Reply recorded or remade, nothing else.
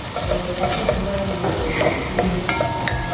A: recorded